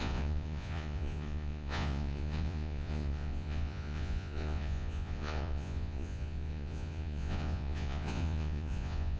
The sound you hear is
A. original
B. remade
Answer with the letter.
B